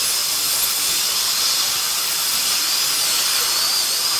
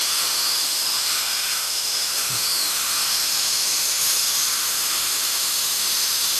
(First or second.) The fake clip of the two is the second